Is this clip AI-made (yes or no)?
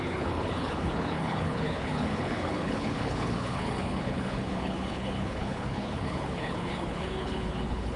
yes